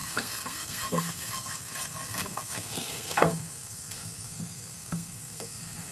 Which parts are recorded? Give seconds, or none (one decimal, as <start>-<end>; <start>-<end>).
none